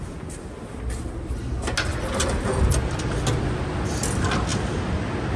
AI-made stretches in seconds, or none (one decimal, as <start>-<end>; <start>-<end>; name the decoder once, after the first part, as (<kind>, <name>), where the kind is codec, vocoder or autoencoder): none

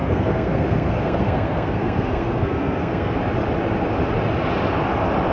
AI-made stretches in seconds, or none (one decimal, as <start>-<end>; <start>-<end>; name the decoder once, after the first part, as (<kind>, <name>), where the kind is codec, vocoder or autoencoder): 0.0-3.2 (codec, SNAC)

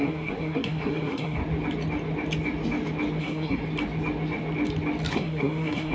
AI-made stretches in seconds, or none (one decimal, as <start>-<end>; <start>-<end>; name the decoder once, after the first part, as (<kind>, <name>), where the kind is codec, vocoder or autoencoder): 0.0-1.4 (codec, SNAC); 3.2-3.6; 5.1-5.9

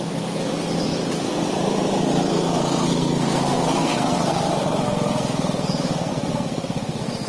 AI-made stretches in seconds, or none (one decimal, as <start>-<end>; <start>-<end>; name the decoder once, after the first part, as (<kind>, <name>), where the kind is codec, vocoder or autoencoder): 0.0-0.4 (codec, SNAC); 2.3-7.3

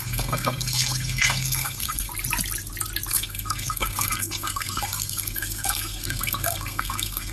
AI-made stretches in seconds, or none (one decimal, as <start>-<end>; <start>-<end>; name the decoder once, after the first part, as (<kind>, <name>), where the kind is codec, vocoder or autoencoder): 0.0-2.1 (codec, SNAC); 3.1-7.3

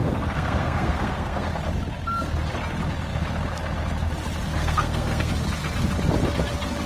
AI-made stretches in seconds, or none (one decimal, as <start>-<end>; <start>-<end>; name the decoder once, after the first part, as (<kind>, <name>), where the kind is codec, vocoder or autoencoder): 0.0-1.5 (codec, SNAC); 4.6-5.3

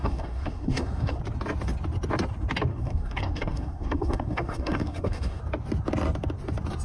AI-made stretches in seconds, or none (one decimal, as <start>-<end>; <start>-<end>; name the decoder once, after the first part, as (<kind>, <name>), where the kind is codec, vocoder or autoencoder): 0.0-1.2 (codec, SNAC); 2.7-5.4

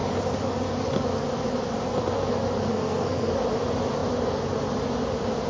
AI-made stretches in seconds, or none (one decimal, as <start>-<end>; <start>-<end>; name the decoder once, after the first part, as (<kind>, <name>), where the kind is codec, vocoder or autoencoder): 2.7-3.3 (codec, SNAC)